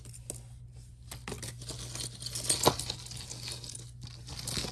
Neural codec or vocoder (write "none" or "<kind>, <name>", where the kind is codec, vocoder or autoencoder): none